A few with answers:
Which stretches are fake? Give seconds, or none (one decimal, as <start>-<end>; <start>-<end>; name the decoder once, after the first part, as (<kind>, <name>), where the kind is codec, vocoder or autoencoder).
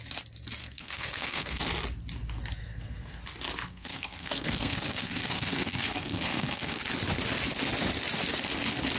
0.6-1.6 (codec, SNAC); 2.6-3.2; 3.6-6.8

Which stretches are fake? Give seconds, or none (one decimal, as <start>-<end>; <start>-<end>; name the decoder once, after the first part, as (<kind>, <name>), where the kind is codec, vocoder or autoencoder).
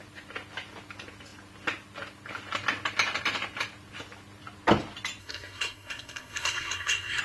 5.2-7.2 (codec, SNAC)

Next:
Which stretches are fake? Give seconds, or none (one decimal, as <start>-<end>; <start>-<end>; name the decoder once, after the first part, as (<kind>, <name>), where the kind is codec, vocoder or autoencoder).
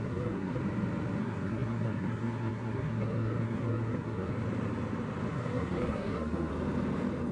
0.0-0.6 (codec, SNAC); 1.2-4.3; 5.3-6.5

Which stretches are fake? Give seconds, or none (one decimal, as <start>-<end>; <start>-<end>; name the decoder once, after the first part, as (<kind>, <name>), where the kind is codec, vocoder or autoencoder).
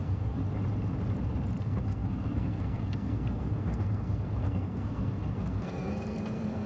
0.0-0.4 (codec, SNAC); 1.6-6.7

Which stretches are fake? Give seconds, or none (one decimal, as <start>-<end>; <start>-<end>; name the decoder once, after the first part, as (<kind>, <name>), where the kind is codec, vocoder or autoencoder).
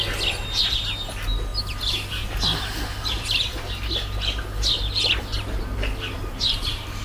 none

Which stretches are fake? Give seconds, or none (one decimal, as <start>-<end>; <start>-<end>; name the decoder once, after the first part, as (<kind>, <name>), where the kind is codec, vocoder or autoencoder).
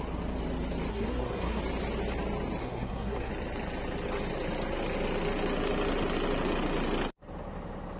0.9-1.6 (codec, SNAC); 2.6-3.3